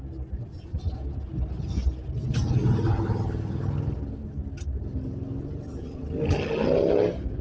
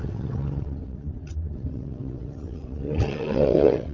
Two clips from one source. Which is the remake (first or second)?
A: second